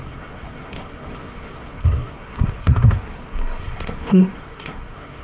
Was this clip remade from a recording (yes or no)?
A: yes